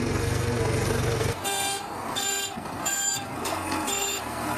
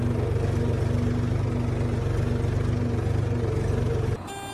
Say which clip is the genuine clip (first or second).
second